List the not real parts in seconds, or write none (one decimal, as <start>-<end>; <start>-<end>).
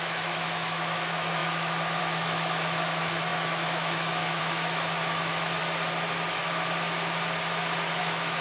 0.0-5.6; 8.0-8.4